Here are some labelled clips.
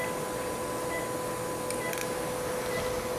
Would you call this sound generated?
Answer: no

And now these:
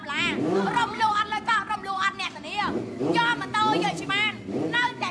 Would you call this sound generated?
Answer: no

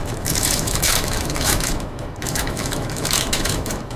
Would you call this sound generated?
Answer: yes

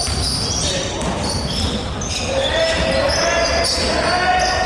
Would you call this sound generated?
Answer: no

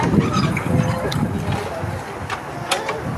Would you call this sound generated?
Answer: no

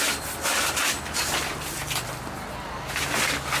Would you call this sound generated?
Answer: no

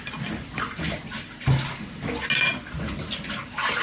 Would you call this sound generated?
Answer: no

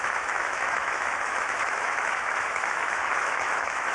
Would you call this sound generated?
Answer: yes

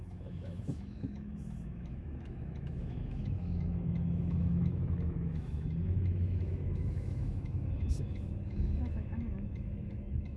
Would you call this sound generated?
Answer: yes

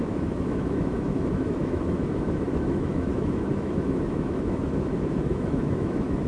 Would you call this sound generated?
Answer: yes